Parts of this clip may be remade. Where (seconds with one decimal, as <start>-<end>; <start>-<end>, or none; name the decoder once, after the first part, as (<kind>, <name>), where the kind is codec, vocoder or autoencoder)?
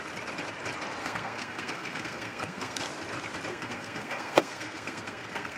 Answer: 1.0-2.8 (codec, SNAC); 3.5-5.6